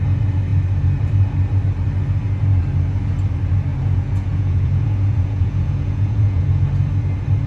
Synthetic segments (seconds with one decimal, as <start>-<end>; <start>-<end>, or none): 3.7-6.6